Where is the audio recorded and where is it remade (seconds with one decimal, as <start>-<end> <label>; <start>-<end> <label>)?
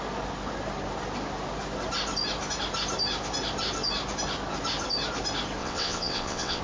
0.0-5.6 recorded; 5.6-6.6 remade